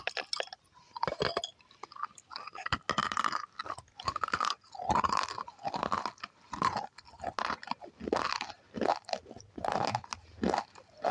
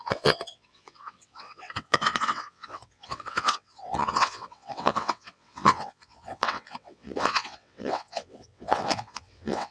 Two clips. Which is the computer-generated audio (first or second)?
second